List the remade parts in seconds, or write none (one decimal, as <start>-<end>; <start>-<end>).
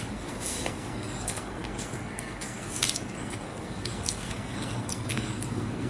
0.0-5.9